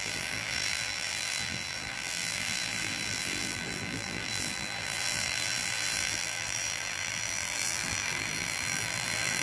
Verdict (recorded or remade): remade